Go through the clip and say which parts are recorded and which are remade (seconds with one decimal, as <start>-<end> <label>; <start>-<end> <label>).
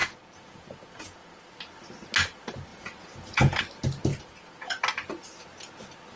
0.0-1.6 remade; 1.6-2.7 recorded; 2.7-3.6 remade; 3.6-4.1 recorded; 4.1-4.8 remade; 4.8-6.2 recorded